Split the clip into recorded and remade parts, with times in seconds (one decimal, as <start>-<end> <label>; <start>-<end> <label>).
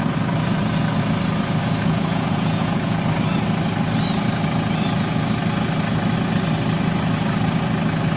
0.0-1.6 recorded; 1.6-3.0 remade; 3.0-8.2 recorded